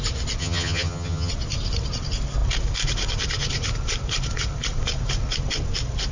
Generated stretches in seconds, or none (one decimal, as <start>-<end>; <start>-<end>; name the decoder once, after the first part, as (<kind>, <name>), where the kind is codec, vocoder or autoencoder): 0.4-1.3 (vocoder, HiFi-GAN)